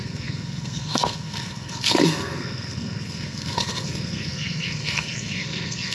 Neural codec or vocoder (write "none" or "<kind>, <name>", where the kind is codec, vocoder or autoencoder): codec, SNAC